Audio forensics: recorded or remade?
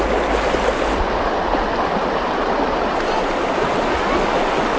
recorded